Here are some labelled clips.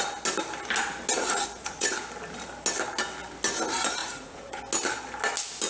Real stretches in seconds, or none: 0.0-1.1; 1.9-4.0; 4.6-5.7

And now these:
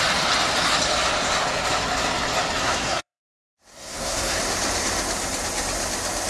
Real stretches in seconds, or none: 0.0-2.6; 3.2-3.7; 4.4-6.3

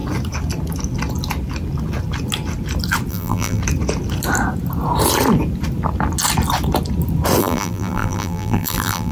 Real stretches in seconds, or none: 0.0-3.1; 3.6-7.4

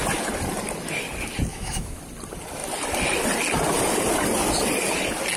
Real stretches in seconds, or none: 0.0-1.5; 2.0-5.4

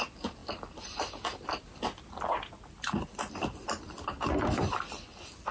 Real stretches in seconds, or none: 0.0-5.5

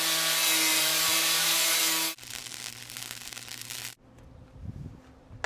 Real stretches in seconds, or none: 0.0-0.7; 1.8-5.5